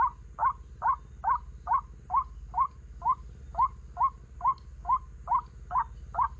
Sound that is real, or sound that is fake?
real